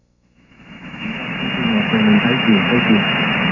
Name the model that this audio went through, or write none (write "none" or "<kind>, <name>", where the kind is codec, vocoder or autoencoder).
autoencoder, DAC-VAE